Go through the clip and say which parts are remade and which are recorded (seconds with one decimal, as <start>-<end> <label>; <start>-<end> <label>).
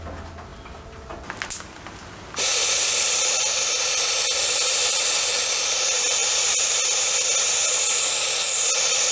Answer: 0.0-9.1 recorded